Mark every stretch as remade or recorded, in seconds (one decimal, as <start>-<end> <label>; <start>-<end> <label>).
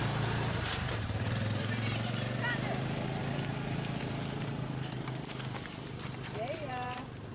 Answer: 0.0-3.2 remade; 3.2-4.0 recorded; 4.0-7.3 remade